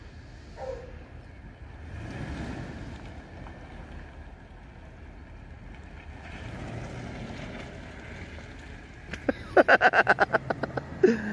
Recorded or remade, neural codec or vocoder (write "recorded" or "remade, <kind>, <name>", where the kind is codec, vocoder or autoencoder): recorded